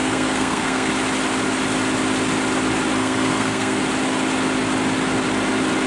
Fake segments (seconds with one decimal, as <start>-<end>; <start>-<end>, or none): 0.0-0.9; 3.0-3.8